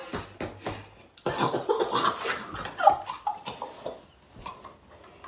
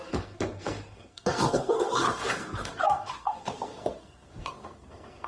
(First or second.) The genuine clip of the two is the first